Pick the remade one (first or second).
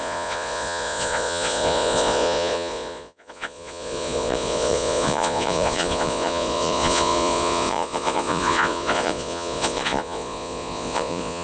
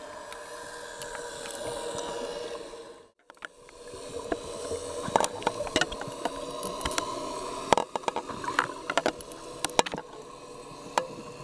first